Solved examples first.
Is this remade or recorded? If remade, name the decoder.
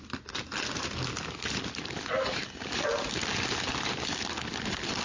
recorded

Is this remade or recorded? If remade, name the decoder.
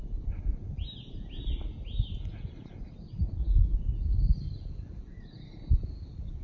recorded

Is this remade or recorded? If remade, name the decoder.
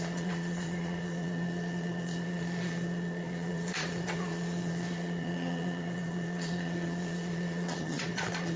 remade, vocoder, Vocos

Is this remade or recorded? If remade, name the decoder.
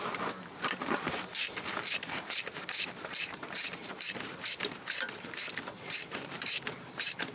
remade, vocoder, BigVGAN v2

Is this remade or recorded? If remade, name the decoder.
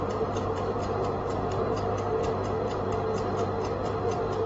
remade, vocoder, BigVGAN v2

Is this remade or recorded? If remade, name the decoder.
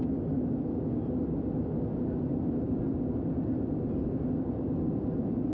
recorded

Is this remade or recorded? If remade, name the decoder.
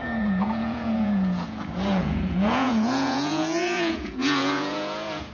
remade, vocoder, Vocos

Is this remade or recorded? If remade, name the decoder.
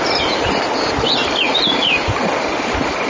recorded